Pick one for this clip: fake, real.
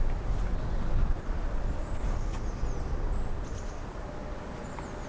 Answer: real